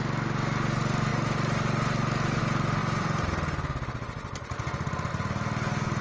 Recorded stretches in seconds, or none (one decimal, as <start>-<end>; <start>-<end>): 0.0-1.1; 2.4-2.8; 5.1-6.0